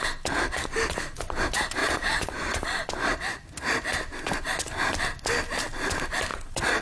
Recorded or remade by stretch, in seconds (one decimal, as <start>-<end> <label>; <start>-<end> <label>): 0.0-1.8 recorded; 1.8-2.9 remade; 2.9-6.3 recorded; 6.3-6.8 remade